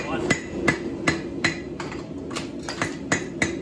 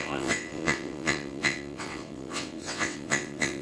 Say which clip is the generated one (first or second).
second